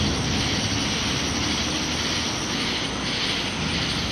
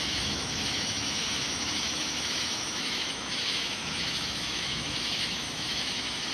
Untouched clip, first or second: first